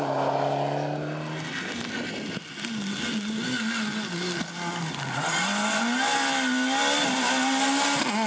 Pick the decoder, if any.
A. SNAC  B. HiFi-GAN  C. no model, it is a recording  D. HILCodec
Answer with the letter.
C